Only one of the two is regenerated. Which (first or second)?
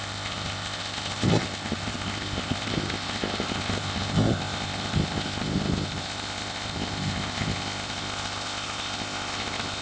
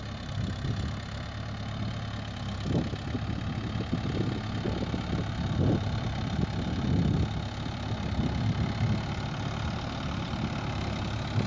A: first